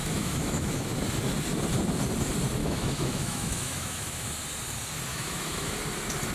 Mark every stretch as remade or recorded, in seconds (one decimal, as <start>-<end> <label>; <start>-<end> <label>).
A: 0.0-0.8 remade; 0.8-2.6 recorded; 2.6-4.3 remade; 4.3-5.1 recorded; 5.1-5.7 remade; 5.7-6.3 recorded